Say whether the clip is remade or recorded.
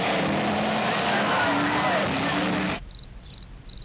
recorded